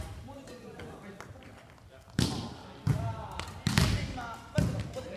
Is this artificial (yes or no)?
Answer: no